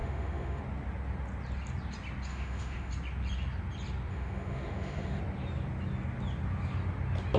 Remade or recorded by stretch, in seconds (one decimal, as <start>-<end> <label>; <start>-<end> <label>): 0.0-0.6 remade; 0.6-2.3 recorded; 2.3-2.9 remade; 2.9-4.1 recorded; 4.1-5.2 remade; 5.2-7.4 recorded